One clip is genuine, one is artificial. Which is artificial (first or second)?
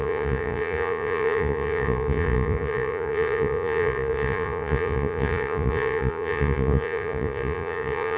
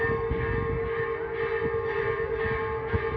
first